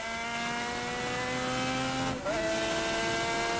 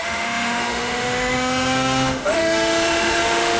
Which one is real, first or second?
first